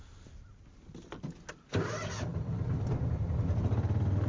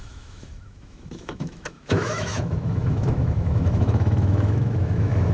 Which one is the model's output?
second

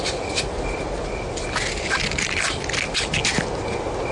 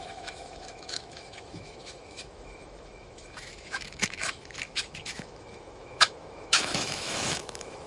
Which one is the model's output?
second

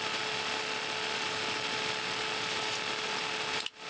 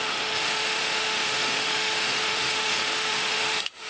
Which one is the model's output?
second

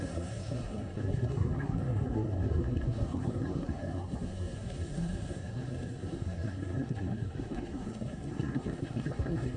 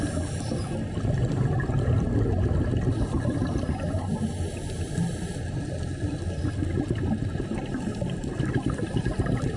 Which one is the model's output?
first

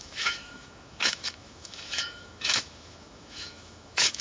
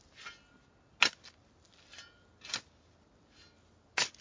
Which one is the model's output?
first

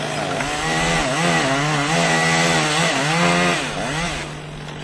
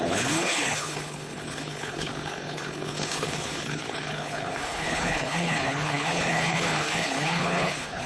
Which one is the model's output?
second